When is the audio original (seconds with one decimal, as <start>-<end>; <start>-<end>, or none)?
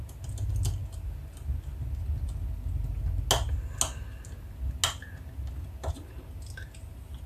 0.0-7.3